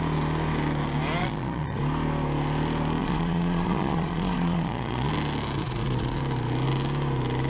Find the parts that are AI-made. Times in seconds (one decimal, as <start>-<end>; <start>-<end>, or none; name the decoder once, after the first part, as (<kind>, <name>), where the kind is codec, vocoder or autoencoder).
1.2-1.8 (vocoder, Vocos); 3.0-5.1; 5.6-6.2